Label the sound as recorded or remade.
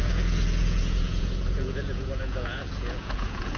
remade